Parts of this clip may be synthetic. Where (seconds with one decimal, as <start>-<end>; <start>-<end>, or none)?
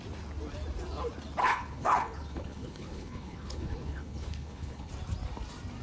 1.4-4.9